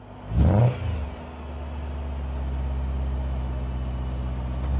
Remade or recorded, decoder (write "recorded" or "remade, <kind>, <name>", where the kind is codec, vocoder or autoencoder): recorded